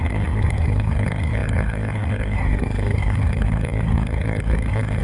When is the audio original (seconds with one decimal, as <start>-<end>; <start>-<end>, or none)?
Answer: none